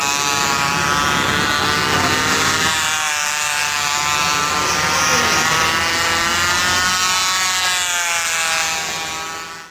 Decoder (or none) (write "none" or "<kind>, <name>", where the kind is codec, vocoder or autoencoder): none